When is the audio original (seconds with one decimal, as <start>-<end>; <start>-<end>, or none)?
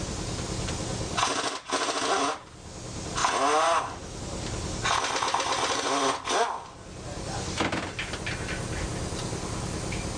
0.0-10.2